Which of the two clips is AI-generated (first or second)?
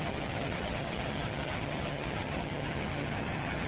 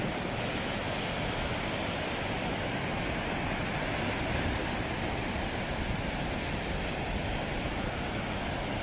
first